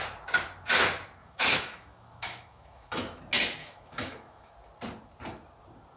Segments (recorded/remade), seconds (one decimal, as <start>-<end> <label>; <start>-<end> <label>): 0.0-1.2 recorded; 1.2-3.2 remade; 3.2-3.6 recorded; 3.6-4.5 remade; 4.5-6.0 recorded